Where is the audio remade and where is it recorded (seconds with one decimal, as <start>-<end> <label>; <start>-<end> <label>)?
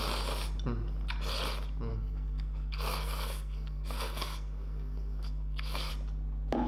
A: 0.0-1.9 recorded; 1.9-5.9 remade; 5.9-6.7 recorded